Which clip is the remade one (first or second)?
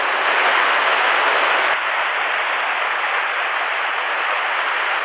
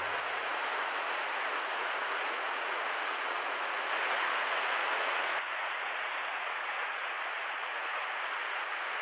second